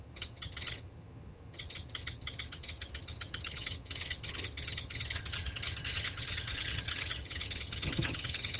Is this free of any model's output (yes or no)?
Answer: no